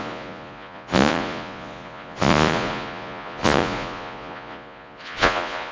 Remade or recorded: remade